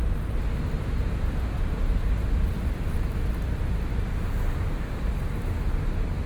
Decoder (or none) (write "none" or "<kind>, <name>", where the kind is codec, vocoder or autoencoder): none